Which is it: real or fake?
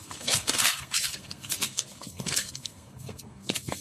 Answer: fake